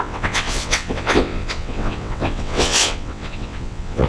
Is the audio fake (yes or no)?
yes